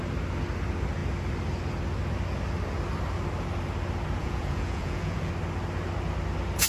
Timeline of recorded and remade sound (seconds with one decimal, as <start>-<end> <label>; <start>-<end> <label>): 0.0-4.2 recorded; 4.2-5.3 remade; 5.3-6.7 recorded